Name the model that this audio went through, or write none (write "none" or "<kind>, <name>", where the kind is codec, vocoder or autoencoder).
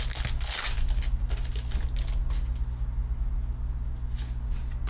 none